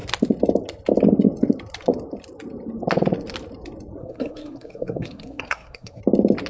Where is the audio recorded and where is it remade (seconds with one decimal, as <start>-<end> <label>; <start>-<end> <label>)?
0.0-4.0 recorded; 4.0-6.0 remade; 6.0-6.5 recorded